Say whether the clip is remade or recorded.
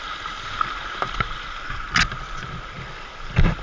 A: recorded